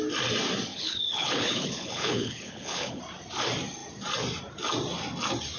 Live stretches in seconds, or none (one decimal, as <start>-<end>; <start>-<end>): 0.0-0.7; 3.0-5.6